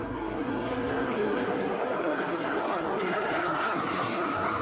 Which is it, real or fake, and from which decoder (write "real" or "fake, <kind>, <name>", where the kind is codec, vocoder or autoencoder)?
fake, codec, SNAC